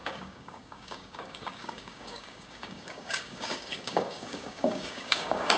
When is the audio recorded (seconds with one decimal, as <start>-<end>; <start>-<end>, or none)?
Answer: none